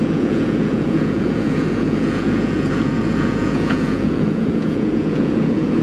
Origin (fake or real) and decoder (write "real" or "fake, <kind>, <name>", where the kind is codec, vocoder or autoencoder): fake, vocoder, Vocos